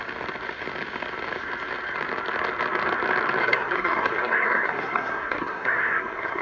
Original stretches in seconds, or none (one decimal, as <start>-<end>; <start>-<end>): 0.0-3.4